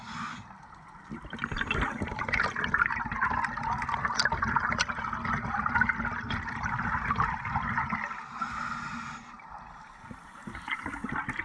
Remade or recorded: recorded